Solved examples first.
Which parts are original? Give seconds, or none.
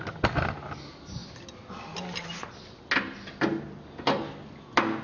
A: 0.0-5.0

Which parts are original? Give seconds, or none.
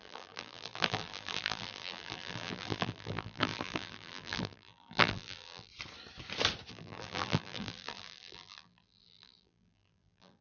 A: 5.7-6.7